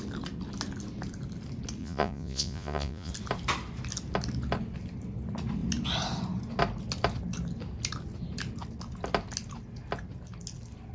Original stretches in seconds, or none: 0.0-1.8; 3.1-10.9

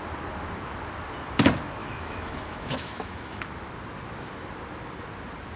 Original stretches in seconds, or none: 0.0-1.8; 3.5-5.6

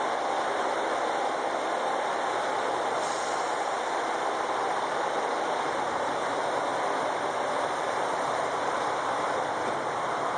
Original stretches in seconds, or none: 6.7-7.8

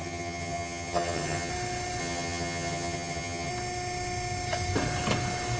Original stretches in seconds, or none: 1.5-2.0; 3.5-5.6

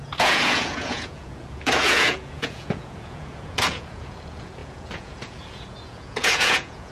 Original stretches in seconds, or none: none

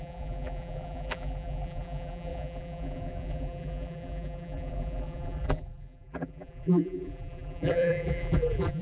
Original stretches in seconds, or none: none

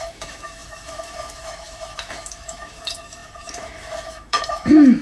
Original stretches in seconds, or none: none